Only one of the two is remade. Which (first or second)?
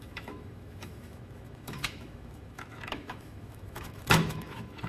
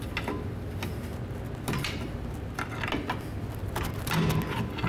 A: first